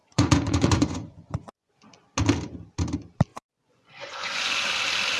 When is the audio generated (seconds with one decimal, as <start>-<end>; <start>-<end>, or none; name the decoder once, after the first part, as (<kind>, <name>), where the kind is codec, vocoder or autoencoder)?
0.0-1.7 (vocoder, Vocos); 3.3-4.7

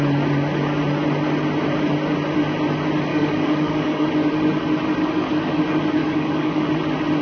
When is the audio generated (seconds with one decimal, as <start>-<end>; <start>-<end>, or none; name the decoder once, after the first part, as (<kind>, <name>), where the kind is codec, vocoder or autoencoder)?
3.1-4.1 (codec, DAC); 5.0-5.6; 6.0-6.6

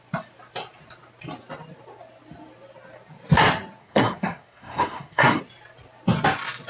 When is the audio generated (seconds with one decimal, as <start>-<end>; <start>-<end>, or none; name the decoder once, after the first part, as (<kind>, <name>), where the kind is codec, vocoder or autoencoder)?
3.8-5.4 (codec, SNAC)

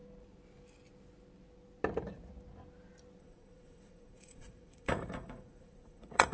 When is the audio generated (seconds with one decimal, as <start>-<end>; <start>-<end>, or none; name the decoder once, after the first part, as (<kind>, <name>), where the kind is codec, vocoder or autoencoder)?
3.2-6.3 (vocoder, Vocos)

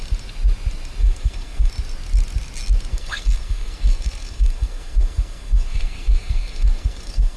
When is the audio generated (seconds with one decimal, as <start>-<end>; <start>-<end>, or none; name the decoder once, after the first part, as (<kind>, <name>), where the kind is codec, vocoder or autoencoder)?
1.0-1.7 (codec, SNAC); 2.9-7.4